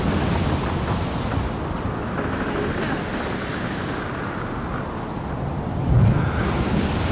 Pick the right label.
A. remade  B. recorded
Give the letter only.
B